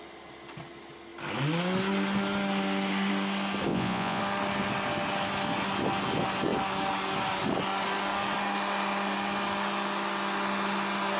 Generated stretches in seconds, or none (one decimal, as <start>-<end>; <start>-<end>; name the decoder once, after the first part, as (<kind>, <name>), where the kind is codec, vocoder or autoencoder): 3.7-4.2 (vocoder, Vocos)